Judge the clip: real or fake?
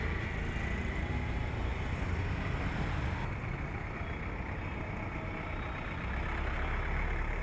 real